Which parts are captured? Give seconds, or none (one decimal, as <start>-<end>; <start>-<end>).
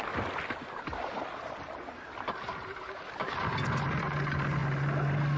0.0-5.4